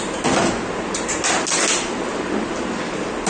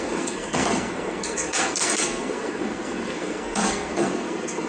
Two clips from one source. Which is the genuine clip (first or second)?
first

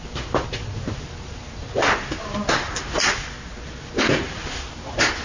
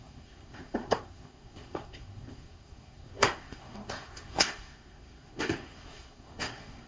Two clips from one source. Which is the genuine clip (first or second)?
first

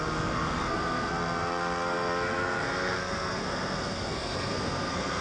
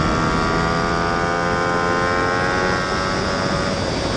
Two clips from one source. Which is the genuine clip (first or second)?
second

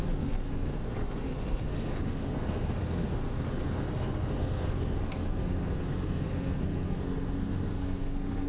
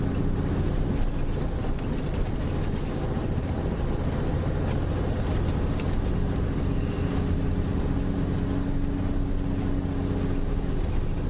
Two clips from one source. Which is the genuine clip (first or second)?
second